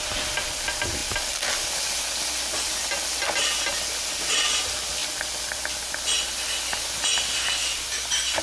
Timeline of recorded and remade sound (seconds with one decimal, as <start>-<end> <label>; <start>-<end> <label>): 0.0-8.4 recorded